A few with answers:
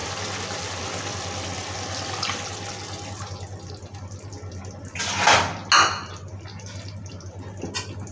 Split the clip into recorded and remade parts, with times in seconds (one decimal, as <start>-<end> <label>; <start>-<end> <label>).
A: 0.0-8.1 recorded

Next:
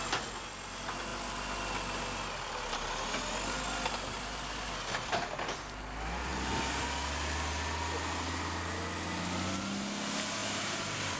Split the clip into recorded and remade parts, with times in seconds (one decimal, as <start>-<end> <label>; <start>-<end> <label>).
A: 0.0-10.4 recorded; 10.4-11.2 remade

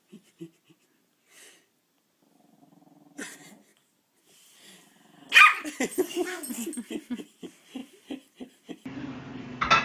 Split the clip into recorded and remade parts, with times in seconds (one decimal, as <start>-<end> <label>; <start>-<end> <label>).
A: 0.0-7.8 recorded; 7.8-8.7 remade; 8.7-9.8 recorded

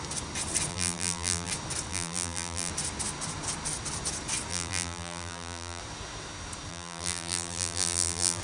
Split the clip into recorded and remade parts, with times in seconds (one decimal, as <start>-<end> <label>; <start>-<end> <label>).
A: 0.0-0.7 recorded; 0.7-1.5 remade; 1.5-1.9 recorded; 1.9-2.7 remade; 2.7-4.5 recorded; 4.5-5.8 remade; 5.8-6.7 recorded; 6.7-8.4 remade

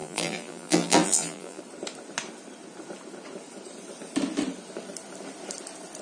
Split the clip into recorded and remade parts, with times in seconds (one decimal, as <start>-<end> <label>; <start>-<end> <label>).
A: 0.0-1.6 remade; 1.6-6.0 recorded

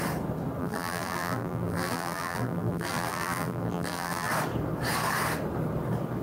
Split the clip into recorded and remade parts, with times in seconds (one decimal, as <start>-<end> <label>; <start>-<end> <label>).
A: 0.0-0.6 recorded; 0.6-4.3 remade; 4.3-6.2 recorded